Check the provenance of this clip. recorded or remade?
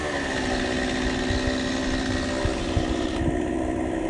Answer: recorded